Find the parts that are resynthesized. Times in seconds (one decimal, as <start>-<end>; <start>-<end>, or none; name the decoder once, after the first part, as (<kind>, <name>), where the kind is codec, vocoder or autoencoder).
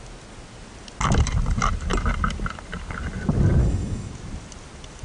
3.6-4.1 (autoencoder, DAC-VAE)